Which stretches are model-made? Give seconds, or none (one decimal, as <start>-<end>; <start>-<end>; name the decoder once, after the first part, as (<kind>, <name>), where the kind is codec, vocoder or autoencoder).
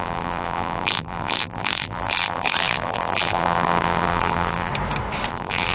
0.0-4.7 (vocoder, BigVGAN v2); 5.3-5.7